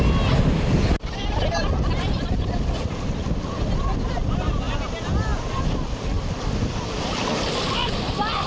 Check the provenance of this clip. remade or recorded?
recorded